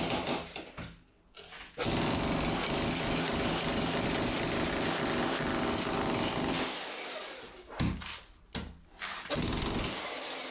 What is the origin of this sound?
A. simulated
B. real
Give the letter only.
B